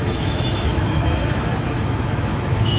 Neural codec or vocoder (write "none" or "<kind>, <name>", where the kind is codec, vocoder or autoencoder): autoencoder, DAC-VAE